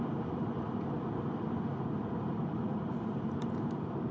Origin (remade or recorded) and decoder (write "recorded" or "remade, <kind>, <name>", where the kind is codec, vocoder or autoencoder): remade, vocoder, BigVGAN v2